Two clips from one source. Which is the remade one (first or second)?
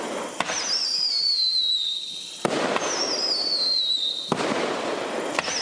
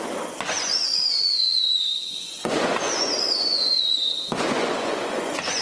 second